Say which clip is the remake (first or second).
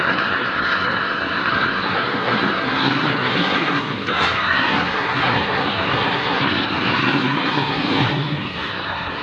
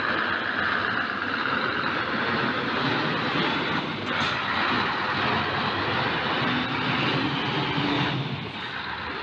first